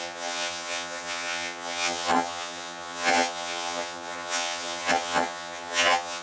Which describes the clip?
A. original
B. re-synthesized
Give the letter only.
B